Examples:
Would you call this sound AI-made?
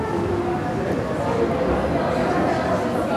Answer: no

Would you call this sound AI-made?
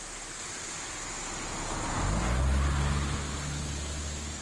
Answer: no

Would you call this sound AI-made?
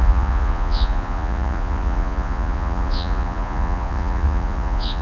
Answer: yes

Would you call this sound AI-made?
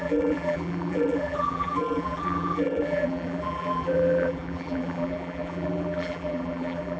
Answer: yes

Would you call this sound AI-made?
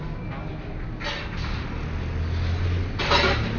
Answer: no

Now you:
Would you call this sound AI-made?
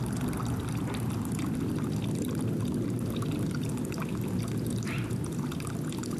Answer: no